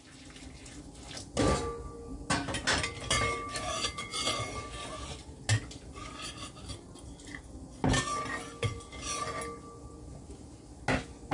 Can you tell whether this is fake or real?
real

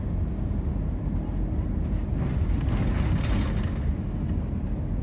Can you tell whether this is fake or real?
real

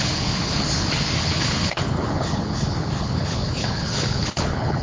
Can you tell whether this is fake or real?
fake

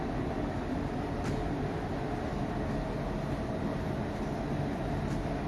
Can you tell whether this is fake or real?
real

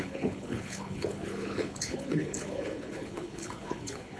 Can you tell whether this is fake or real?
fake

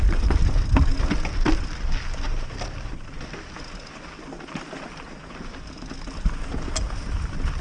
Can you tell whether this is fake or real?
real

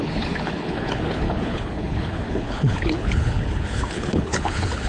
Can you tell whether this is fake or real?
fake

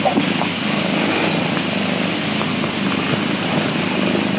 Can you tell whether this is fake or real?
real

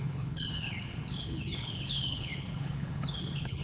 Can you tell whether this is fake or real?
fake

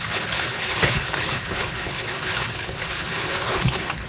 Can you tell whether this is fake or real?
fake